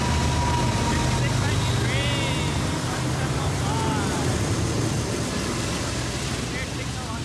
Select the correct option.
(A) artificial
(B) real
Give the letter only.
B